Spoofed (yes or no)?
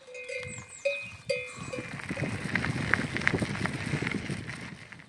no